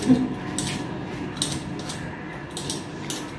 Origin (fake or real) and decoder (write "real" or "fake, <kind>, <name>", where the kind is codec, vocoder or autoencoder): real